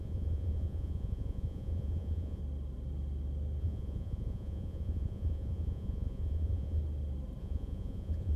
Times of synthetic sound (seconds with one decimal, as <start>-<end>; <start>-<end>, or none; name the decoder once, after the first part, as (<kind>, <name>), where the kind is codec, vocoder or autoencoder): 0.0-2.4 (vocoder, Vocos); 3.6-6.8; 7.4-8.4